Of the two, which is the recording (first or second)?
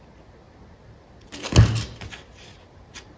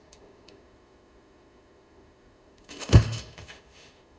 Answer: first